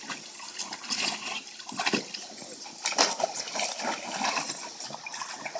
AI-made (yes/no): no